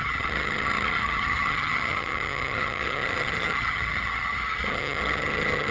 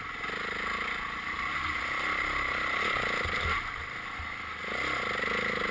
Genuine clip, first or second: second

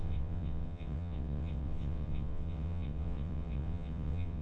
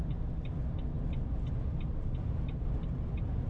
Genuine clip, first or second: second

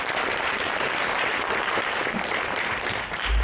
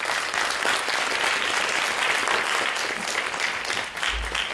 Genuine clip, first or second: second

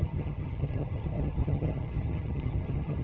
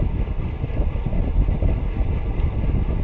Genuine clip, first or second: second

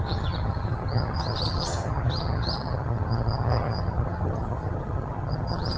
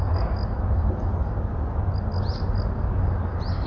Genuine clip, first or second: second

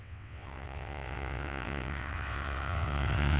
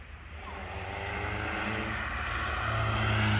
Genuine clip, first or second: second